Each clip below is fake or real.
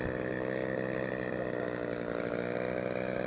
real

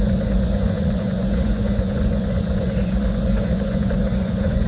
fake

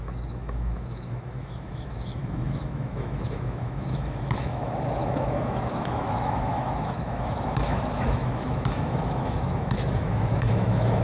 fake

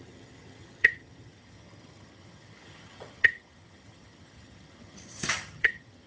fake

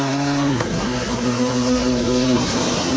fake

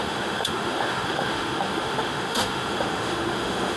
fake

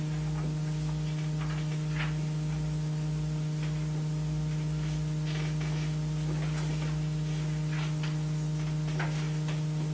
real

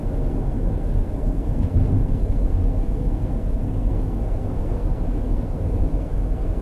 fake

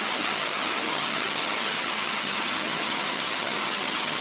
fake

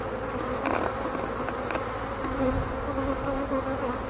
real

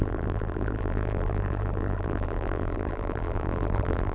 fake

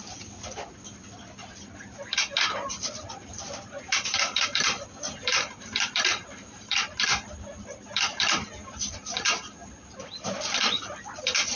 fake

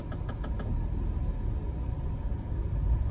real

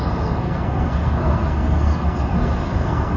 fake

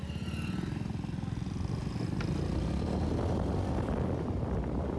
real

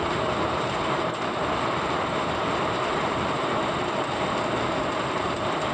fake